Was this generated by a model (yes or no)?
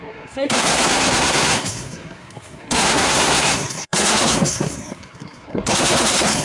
yes